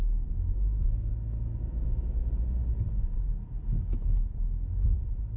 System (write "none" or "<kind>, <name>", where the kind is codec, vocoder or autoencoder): none